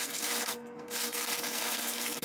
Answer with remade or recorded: remade